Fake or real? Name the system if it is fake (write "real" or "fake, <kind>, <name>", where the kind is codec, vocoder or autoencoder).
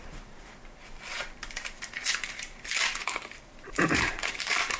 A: fake, vocoder, BigVGAN v2